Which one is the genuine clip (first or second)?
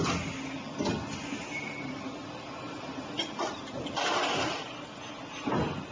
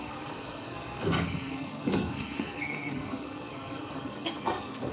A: first